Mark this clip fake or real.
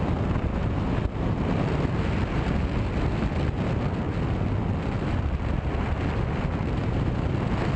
real